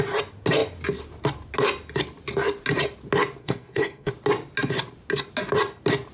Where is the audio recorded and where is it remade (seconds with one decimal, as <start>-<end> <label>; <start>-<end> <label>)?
0.0-3.4 recorded; 3.4-4.1 remade; 4.1-6.1 recorded